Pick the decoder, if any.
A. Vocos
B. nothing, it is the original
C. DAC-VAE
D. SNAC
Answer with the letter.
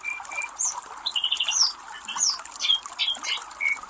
B